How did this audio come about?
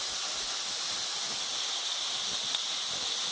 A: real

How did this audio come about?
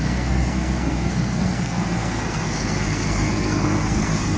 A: fake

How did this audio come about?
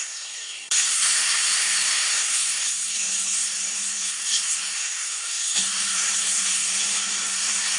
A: fake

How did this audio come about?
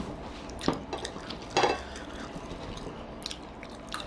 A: real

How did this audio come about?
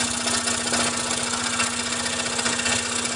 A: real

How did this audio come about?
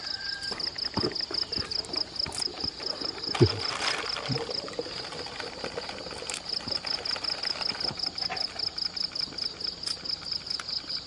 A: real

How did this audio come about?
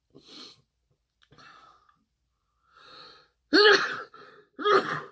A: real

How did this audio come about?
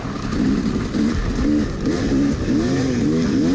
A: real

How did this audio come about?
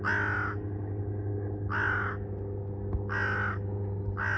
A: real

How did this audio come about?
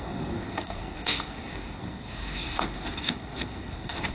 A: fake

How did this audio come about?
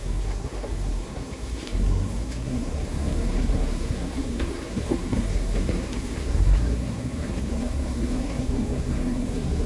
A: fake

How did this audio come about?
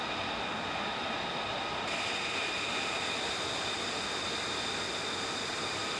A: real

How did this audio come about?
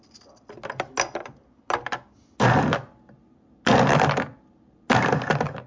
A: real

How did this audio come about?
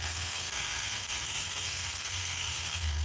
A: fake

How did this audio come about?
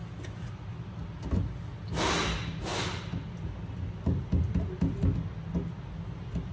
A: real